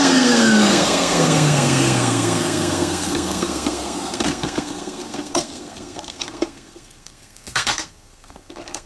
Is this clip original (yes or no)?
no